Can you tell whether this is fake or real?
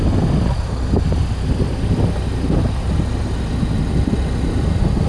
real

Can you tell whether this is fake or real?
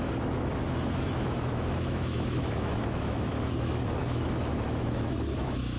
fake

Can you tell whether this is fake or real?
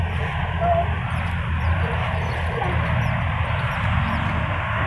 real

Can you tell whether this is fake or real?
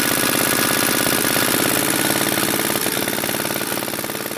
real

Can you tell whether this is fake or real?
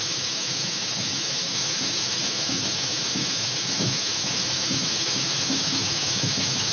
fake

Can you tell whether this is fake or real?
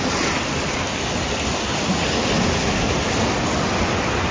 real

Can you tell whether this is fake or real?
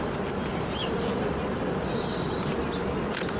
real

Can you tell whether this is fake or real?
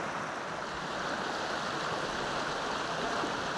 real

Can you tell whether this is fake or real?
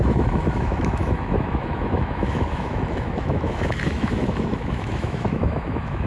fake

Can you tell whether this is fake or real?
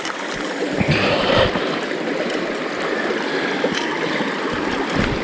real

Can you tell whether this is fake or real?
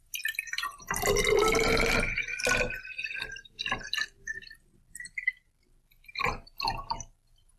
real